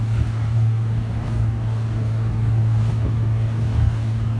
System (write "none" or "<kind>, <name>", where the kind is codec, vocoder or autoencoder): codec, DAC